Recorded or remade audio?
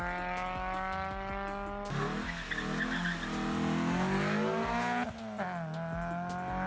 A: recorded